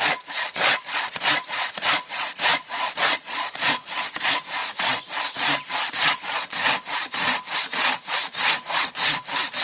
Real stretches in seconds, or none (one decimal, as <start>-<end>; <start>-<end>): 4.6-5.9; 6.6-9.6